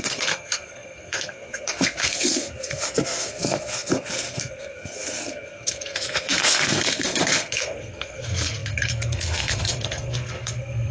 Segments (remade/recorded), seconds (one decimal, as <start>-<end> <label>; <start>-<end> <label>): 0.0-10.9 remade